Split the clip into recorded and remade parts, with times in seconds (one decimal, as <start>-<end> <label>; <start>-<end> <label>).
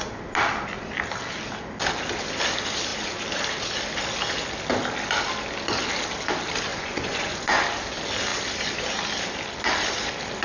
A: 0.0-6.7 recorded; 6.7-7.6 remade; 7.6-10.4 recorded